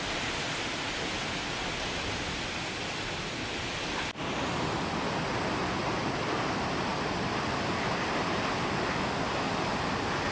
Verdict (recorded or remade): recorded